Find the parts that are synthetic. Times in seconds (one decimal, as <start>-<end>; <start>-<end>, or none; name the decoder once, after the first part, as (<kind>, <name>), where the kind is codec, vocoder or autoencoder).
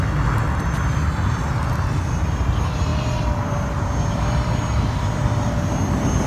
none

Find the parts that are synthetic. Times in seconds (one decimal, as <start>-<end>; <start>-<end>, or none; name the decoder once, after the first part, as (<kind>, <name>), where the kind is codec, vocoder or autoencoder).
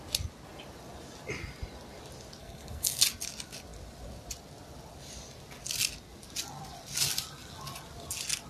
2.4-3.0 (codec, SNAC)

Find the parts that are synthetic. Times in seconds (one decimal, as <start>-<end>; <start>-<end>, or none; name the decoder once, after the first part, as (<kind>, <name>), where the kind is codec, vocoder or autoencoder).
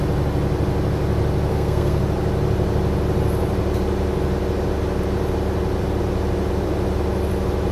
1.5-2.0 (codec, SNAC)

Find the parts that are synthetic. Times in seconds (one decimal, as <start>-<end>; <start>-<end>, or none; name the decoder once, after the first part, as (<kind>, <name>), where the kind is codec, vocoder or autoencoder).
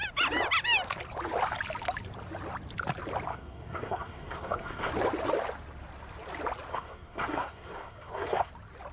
3.3-4.9 (codec, SNAC); 6.7-8.5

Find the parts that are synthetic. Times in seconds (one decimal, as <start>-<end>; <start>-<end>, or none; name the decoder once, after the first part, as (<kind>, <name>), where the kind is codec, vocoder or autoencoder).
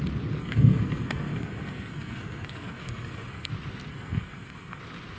0.4-3.5 (codec, SNAC); 3.9-4.8